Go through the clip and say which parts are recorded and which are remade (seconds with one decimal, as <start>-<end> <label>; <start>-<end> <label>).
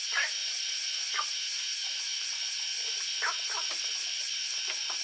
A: 0.0-0.4 recorded; 0.4-1.2 remade; 1.2-1.8 recorded; 1.8-2.5 remade; 2.5-5.0 recorded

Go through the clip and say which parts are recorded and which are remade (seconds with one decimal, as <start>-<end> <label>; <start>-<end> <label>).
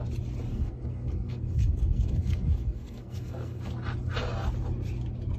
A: 0.0-0.5 recorded; 0.5-3.7 remade; 3.7-5.4 recorded